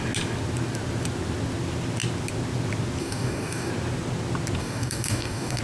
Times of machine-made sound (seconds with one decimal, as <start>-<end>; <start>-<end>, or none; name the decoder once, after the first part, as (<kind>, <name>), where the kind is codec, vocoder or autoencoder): 3.0-3.7 (codec, DAC); 4.6-5.6